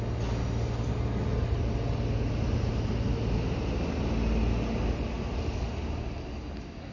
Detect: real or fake real